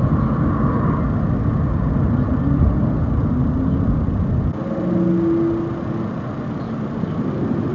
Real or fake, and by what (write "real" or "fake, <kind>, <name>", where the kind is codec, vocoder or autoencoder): real